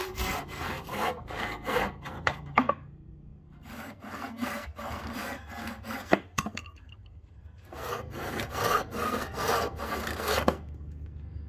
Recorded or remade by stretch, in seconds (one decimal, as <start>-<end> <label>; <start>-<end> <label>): 0.0-11.5 remade